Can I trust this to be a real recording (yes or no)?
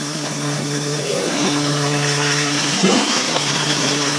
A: no